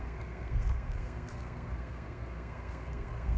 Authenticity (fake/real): fake